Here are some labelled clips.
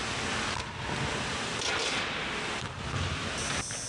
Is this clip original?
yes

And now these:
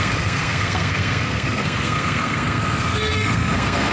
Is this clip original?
no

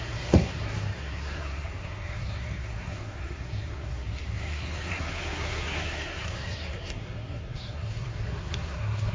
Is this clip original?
no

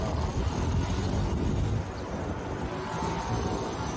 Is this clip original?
yes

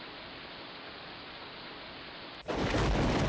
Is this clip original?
yes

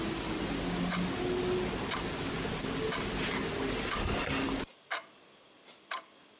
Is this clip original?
yes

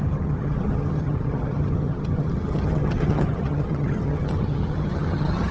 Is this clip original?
no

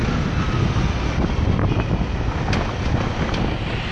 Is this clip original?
yes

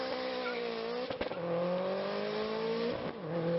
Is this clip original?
yes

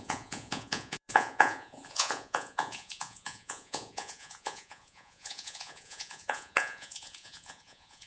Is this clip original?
no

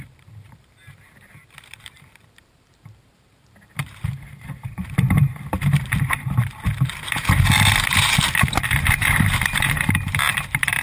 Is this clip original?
no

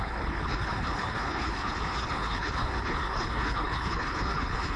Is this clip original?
no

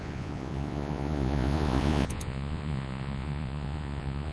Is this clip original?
no